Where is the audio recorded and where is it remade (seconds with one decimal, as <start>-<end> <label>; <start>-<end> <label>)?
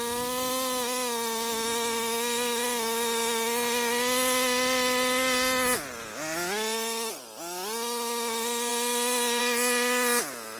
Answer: 0.0-10.6 recorded